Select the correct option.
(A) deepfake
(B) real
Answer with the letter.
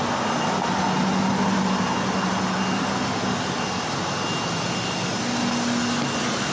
B